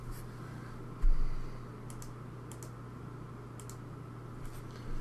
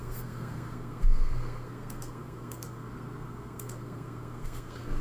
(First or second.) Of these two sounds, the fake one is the second